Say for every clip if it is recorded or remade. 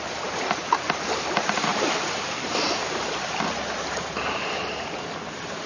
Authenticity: remade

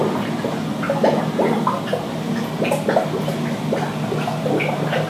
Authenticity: recorded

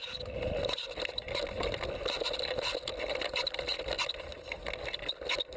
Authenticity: recorded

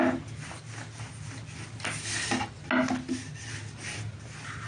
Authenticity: recorded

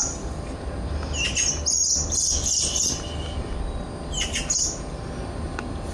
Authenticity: recorded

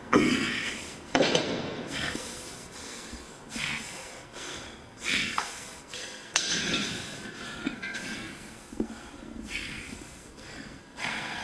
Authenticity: remade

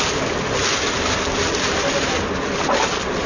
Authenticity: recorded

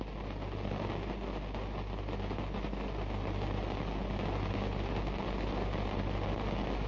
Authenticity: recorded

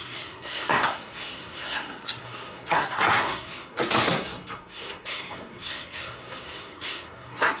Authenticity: remade